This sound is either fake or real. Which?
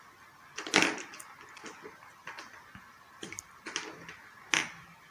real